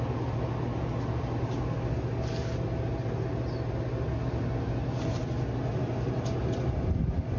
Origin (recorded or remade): recorded